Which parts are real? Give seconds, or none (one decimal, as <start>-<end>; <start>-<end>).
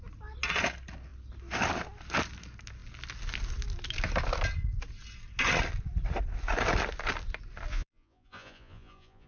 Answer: 0.0-7.7